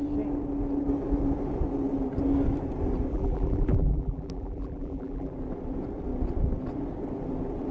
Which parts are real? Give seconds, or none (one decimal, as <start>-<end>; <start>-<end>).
0.0-3.1; 5.3-7.7